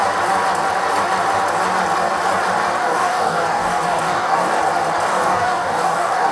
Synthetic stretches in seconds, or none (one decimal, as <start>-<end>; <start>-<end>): 2.8-4.6; 5.1-6.3